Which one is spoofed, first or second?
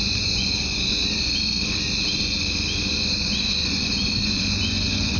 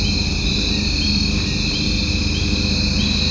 first